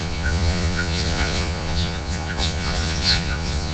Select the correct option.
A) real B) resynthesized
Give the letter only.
B